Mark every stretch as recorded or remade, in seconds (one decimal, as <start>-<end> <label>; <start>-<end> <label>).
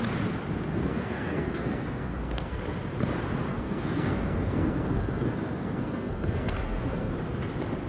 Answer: 0.0-0.7 recorded; 0.7-2.6 remade; 2.6-3.5 recorded; 3.5-7.1 remade; 7.1-7.9 recorded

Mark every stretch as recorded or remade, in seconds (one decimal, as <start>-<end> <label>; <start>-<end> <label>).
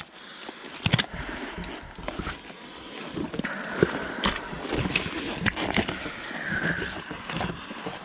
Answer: 0.0-8.0 recorded